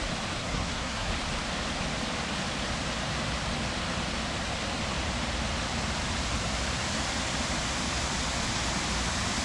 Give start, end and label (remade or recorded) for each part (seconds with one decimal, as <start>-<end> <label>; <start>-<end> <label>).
0.0-0.4 recorded; 0.4-1.1 remade; 1.1-9.4 recorded